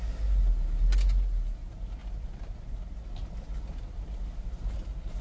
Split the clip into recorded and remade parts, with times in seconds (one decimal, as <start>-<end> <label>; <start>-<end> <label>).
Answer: 0.0-5.2 recorded